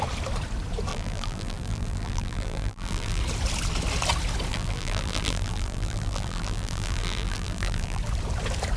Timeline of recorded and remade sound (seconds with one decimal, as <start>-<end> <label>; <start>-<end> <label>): 0.0-0.9 recorded; 0.9-3.2 remade; 3.2-4.5 recorded; 4.5-8.0 remade; 8.0-8.8 recorded